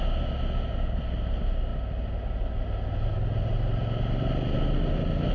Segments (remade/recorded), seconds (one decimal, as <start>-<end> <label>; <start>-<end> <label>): 0.0-5.3 recorded